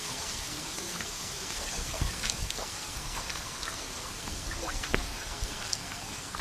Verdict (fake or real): fake